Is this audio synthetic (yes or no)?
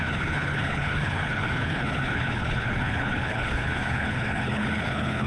yes